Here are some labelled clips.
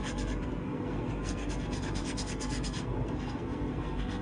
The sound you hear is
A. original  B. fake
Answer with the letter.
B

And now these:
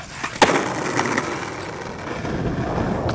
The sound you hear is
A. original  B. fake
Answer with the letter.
A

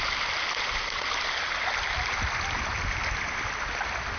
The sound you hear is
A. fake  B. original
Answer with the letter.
B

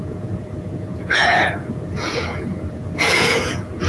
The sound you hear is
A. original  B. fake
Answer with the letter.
B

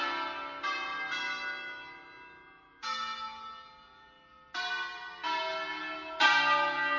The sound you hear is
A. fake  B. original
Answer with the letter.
B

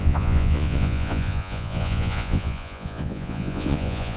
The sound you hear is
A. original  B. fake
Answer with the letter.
B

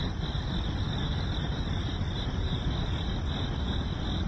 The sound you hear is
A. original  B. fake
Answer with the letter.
A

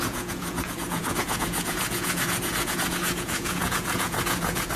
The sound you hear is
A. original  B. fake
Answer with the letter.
B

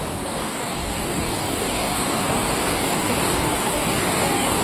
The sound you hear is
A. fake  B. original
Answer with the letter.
A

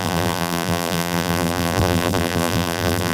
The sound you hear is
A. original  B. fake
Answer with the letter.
B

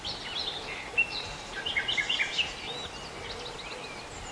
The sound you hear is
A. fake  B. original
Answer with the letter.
B